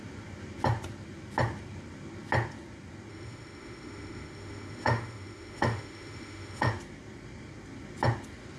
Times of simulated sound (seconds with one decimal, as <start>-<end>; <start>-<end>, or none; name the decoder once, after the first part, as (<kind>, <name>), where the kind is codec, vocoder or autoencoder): 3.1-6.7 (autoencoder, DAC-VAE)